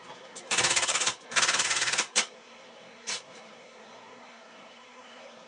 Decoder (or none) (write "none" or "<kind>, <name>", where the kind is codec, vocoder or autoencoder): codec, SNAC